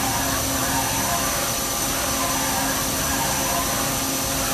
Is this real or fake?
real